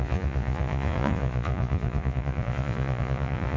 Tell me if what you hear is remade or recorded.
remade